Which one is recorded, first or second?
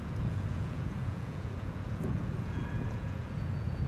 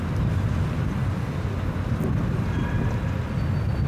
second